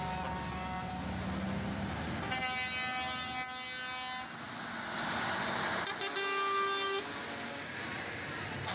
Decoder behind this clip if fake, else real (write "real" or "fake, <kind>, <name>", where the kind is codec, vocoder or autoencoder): real